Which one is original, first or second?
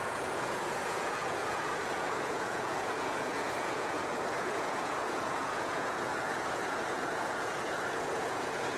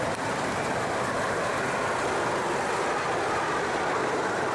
second